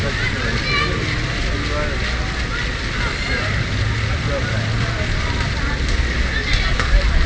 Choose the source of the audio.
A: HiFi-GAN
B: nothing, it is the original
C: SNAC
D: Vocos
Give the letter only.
B